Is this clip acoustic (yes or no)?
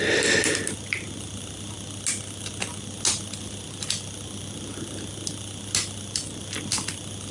yes